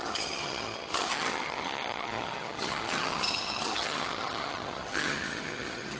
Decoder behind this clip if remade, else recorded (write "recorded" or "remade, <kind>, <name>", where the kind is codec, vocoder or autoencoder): remade, vocoder, HiFi-GAN